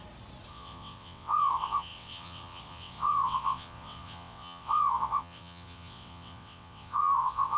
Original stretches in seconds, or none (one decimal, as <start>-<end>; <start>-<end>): 0.0-0.5